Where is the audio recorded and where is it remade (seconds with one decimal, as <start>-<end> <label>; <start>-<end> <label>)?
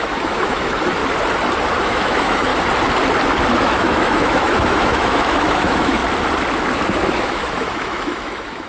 0.0-1.0 remade; 1.0-1.8 recorded; 1.8-2.5 remade; 2.5-3.6 recorded; 3.6-6.0 remade; 6.0-7.1 recorded; 7.1-8.7 remade